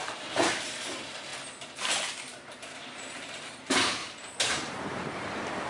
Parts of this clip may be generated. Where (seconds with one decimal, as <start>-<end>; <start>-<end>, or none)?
0.0-1.3; 2.1-4.0; 4.5-5.7